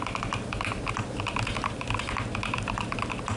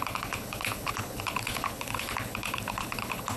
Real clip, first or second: first